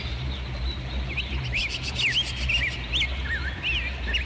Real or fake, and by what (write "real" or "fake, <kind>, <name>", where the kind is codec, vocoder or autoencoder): real